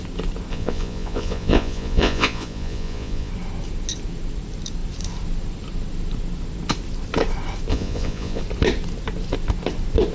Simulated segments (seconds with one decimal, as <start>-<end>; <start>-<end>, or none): 0.5-3.3; 7.7-8.4